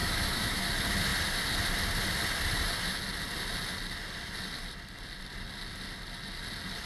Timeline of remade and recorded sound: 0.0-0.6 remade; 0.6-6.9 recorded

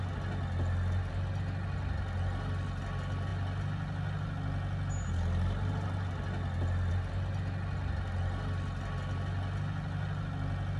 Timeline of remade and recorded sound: 0.0-10.8 recorded

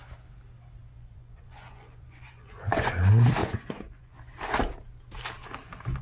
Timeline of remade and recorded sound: 0.0-0.8 recorded; 0.8-2.9 remade; 2.9-3.4 recorded; 3.4-4.2 remade; 4.2-6.0 recorded